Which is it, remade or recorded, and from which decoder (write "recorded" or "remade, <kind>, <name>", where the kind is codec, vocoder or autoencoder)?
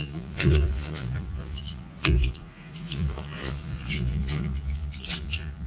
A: remade, vocoder, Vocos